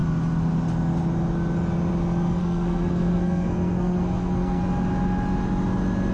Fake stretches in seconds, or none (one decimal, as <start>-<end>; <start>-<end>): 2.4-4.6